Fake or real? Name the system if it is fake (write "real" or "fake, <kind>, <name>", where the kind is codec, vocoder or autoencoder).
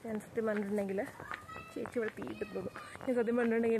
real